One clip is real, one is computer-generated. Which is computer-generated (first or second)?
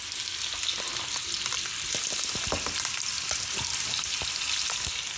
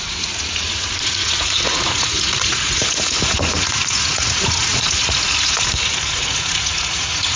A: second